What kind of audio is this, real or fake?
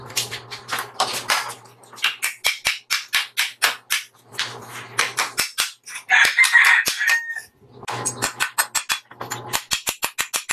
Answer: real